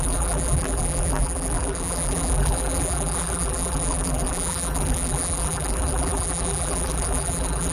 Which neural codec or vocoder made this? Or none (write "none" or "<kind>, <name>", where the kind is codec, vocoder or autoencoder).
vocoder, BigVGAN v2